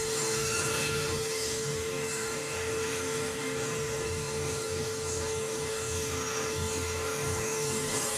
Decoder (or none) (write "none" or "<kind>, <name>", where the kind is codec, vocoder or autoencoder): codec, DAC